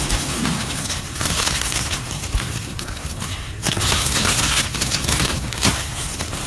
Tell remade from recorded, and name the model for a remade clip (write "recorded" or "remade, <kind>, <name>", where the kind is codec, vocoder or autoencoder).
remade, codec, SNAC